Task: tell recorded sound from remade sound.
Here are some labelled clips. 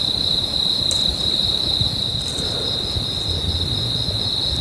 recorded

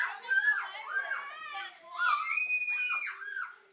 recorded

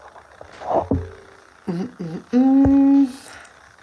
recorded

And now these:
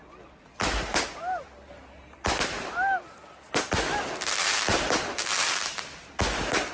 recorded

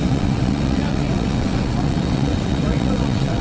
remade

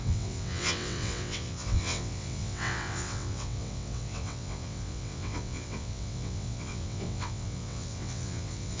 remade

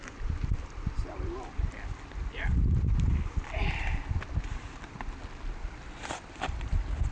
recorded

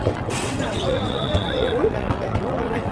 remade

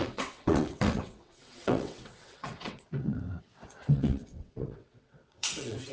remade